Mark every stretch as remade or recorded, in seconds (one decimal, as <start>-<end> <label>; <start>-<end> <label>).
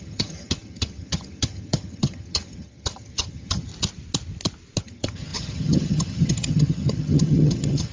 0.0-3.7 remade; 3.7-4.8 recorded; 4.8-7.9 remade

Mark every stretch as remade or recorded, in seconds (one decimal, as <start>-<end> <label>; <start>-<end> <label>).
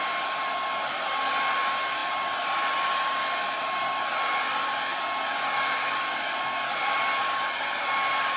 0.0-8.4 recorded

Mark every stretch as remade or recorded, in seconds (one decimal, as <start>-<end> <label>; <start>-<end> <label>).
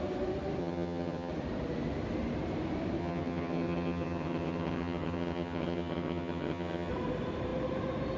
0.0-0.6 recorded; 0.6-1.3 remade; 1.3-3.0 recorded; 3.0-6.9 remade; 6.9-8.2 recorded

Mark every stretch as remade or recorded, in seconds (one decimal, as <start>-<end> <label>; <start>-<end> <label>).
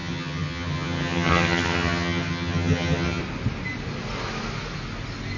0.0-3.2 remade; 3.2-5.4 recorded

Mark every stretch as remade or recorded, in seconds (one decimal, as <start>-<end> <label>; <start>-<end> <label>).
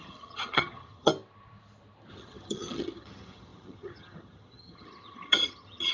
0.0-1.1 remade; 1.1-2.1 recorded; 2.1-5.9 remade